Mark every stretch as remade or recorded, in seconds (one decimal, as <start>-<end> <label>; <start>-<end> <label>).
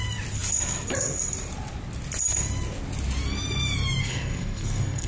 0.0-4.0 recorded; 4.0-5.1 remade